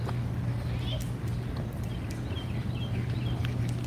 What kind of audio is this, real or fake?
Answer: real